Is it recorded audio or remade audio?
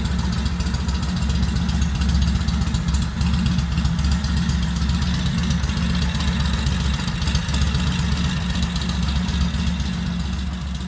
recorded